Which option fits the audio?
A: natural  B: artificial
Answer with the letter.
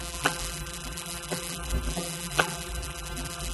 B